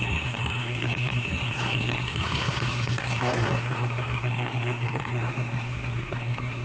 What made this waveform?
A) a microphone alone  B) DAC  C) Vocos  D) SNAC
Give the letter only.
D